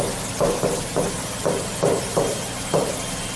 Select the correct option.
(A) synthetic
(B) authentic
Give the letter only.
B